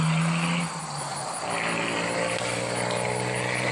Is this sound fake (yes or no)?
no